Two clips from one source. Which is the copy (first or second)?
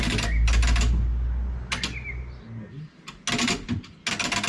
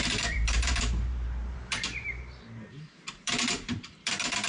second